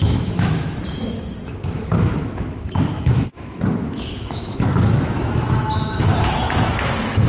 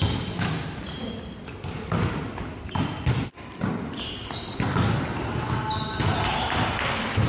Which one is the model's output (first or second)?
first